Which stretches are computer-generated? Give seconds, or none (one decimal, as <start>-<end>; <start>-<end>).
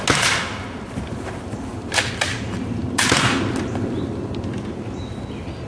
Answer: none